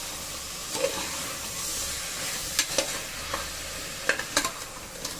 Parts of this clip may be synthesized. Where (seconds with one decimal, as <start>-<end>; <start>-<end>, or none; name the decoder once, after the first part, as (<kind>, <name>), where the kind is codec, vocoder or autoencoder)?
none